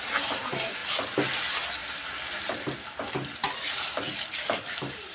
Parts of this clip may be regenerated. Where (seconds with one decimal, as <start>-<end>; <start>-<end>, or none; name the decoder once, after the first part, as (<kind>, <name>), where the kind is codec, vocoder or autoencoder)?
0.8-1.4 (vocoder, BigVGAN v2); 1.8-5.1